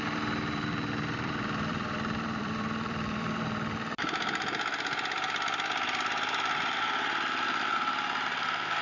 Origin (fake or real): fake